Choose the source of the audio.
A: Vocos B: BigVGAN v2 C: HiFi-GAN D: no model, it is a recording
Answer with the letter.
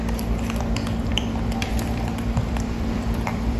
B